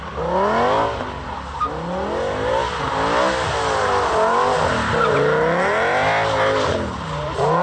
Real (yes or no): yes